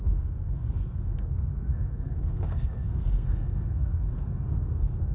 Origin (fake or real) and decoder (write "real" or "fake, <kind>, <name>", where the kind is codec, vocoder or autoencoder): fake, codec, SNAC